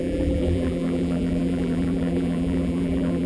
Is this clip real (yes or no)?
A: no